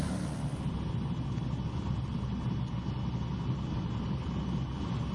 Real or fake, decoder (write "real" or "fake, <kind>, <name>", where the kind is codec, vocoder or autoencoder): real